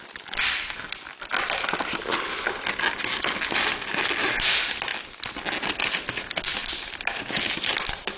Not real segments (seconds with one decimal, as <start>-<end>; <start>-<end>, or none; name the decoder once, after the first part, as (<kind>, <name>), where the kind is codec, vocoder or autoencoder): none